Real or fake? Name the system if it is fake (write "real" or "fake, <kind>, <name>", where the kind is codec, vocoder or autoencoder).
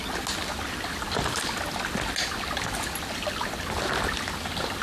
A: real